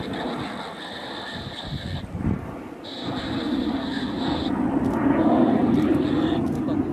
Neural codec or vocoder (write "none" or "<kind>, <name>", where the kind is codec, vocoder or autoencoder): none